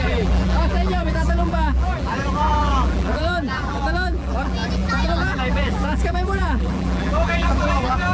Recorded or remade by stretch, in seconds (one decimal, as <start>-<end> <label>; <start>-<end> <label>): 0.0-8.1 remade